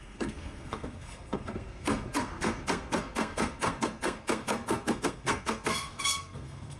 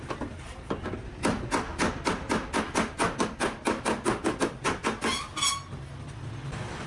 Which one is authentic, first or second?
second